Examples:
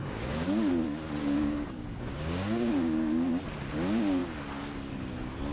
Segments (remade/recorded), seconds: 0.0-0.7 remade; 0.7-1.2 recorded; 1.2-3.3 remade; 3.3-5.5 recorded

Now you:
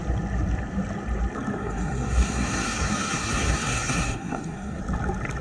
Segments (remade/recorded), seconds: 0.0-1.6 recorded; 1.6-4.8 remade; 4.8-5.4 recorded

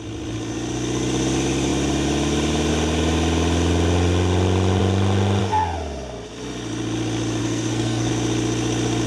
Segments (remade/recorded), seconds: 0.0-7.4 recorded; 7.4-8.1 remade; 8.1-9.1 recorded

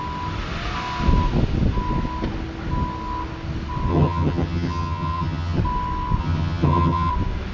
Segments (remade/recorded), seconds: 0.0-3.9 recorded; 3.9-5.6 remade; 5.6-6.2 recorded; 6.2-7.1 remade; 7.1-7.5 recorded

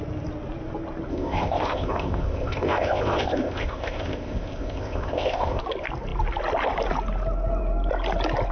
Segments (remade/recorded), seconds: 0.0-1.1 recorded; 1.1-5.6 remade; 5.6-8.5 recorded

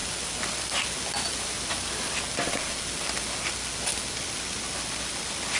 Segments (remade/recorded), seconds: 0.0-5.6 recorded

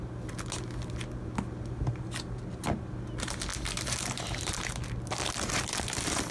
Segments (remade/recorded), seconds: 0.0-3.5 recorded; 3.5-6.3 remade

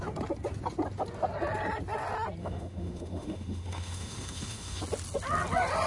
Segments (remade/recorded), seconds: 0.0-2.4 recorded; 2.4-4.8 remade; 4.8-5.9 recorded